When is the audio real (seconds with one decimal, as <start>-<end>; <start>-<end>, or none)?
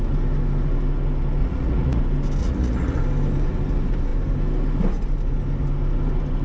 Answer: 0.0-1.4; 2.0-2.4; 3.0-6.4